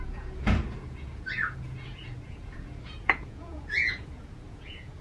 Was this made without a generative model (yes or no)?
no